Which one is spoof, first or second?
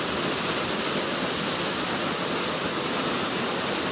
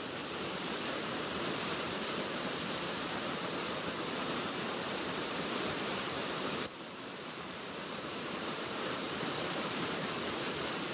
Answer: second